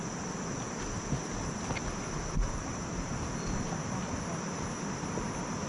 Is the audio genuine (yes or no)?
yes